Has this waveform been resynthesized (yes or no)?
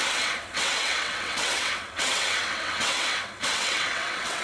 yes